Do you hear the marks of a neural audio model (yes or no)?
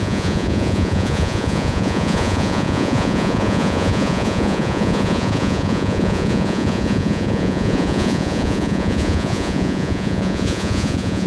yes